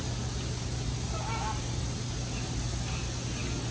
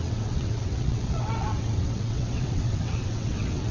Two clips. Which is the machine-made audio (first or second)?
second